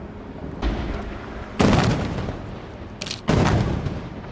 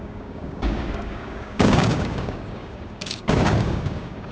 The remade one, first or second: second